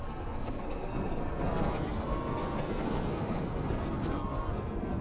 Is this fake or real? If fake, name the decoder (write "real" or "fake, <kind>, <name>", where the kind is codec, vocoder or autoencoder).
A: fake, codec, SNAC